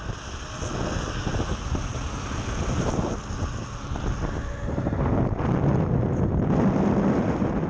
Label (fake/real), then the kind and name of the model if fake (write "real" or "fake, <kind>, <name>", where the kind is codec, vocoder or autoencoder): real